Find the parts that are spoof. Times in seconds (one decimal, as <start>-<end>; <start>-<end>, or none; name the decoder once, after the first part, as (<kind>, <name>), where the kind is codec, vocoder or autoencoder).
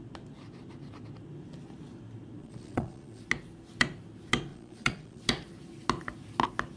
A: 2.4-3.2 (vocoder, Vocos); 4.5-5.2